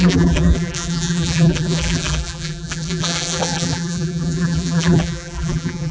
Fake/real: fake